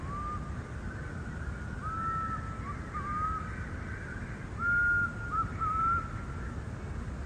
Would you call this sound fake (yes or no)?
no